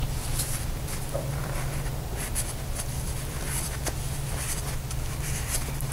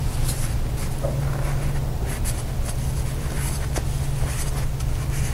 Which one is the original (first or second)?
second